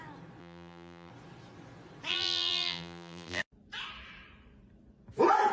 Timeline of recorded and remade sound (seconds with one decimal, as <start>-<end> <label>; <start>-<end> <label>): 0.0-0.4 recorded; 0.4-1.1 remade; 1.1-2.1 recorded; 2.1-3.4 remade; 3.4-5.5 recorded